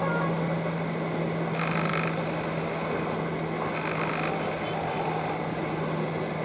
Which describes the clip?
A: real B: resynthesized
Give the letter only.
A